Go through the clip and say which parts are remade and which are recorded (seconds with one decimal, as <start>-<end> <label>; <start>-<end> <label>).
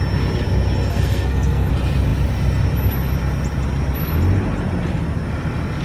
0.0-0.9 recorded; 0.9-1.7 remade; 1.7-5.8 recorded